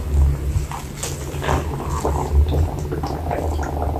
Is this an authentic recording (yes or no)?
yes